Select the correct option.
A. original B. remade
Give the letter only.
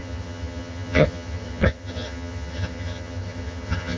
B